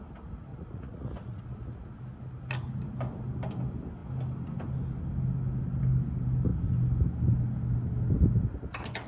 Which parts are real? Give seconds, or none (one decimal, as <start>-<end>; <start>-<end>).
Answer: 0.0-0.5; 1.4-9.1